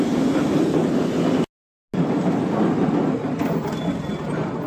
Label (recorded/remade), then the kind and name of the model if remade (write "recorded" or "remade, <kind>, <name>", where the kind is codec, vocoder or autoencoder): recorded